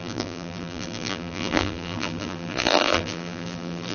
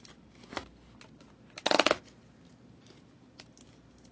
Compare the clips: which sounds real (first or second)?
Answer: second